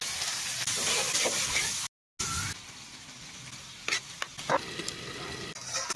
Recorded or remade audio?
recorded